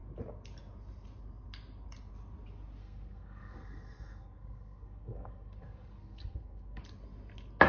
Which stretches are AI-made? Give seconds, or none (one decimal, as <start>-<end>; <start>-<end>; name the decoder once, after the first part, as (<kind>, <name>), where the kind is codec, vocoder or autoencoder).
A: 2.8-6.8 (codec, SNAC)